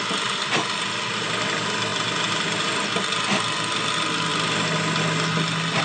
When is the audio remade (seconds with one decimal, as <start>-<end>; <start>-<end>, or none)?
none